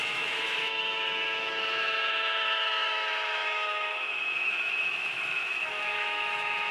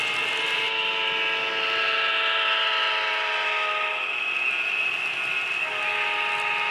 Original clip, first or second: second